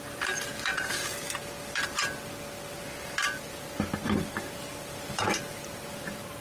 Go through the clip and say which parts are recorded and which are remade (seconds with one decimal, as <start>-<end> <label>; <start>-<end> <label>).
0.0-6.4 remade